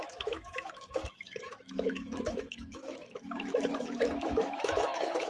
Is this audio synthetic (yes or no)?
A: yes